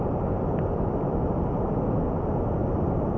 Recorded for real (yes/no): yes